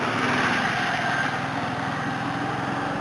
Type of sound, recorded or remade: recorded